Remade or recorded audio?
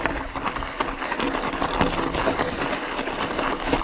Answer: recorded